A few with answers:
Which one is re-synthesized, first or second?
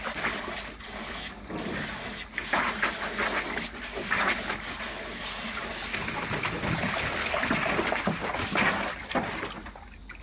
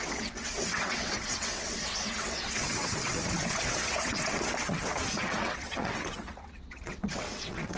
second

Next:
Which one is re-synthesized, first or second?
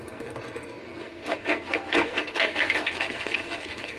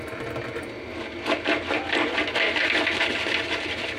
first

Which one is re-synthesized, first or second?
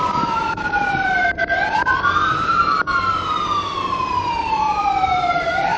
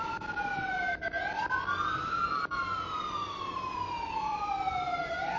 first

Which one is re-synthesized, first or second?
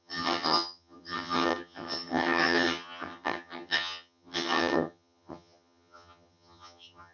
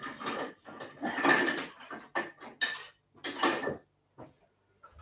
first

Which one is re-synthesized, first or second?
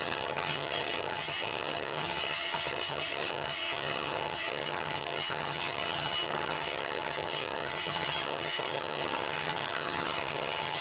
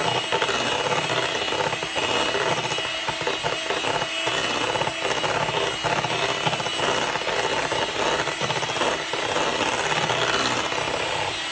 first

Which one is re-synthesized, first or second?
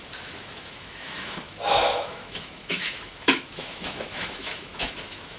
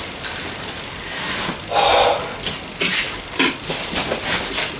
first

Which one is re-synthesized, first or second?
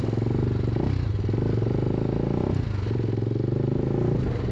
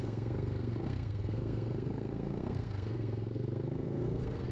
second